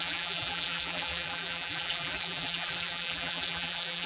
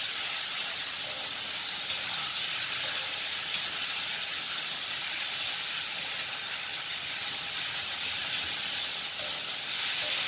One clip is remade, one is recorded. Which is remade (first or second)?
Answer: first